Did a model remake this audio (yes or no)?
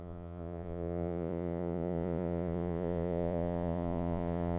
yes